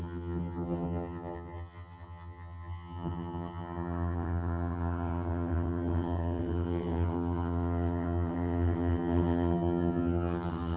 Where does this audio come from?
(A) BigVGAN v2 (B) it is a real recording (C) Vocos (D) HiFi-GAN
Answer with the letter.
D